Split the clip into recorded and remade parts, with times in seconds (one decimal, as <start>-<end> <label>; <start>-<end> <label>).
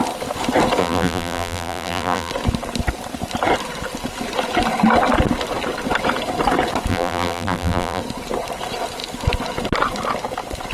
0.0-0.8 recorded; 0.8-2.3 remade; 2.3-6.9 recorded; 6.9-8.0 remade; 8.0-10.7 recorded